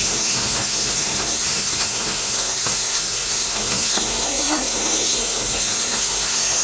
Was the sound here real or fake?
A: fake